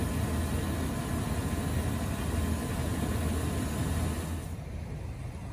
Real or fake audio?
real